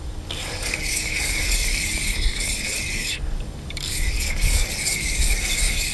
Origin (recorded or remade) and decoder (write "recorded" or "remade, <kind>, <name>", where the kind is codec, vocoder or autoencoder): remade, codec, DAC